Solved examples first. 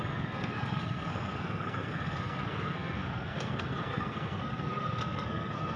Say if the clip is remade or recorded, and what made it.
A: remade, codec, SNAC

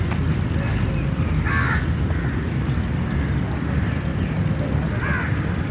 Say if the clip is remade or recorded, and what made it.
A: recorded